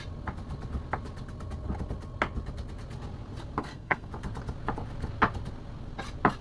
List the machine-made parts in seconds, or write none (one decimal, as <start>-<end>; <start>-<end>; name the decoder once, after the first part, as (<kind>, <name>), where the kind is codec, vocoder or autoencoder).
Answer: 3.6-4.1 (codec, SNAC)